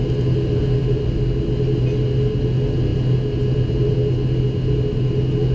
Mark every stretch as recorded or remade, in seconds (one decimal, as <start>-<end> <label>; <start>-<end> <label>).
0.0-5.5 recorded

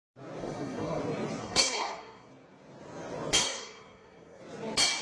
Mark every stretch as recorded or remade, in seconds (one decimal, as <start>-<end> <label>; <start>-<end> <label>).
0.0-0.4 recorded; 0.4-1.0 remade; 1.0-1.4 recorded; 1.4-2.3 remade; 2.3-3.4 recorded; 3.4-4.4 remade; 4.4-5.0 recorded

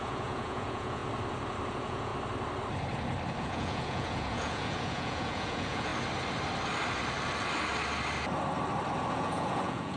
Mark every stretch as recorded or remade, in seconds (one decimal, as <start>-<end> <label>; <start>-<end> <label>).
0.0-1.0 remade; 1.0-1.7 recorded; 1.7-2.1 remade; 2.1-3.4 recorded; 3.4-5.9 remade; 5.9-9.1 recorded; 9.1-10.0 remade

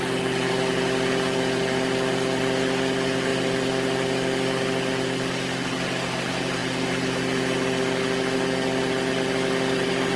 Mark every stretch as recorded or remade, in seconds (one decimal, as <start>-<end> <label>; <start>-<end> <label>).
0.0-10.2 recorded